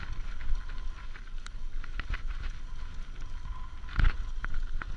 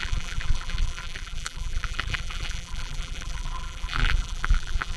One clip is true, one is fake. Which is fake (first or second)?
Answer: second